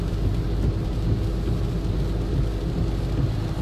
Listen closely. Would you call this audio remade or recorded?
recorded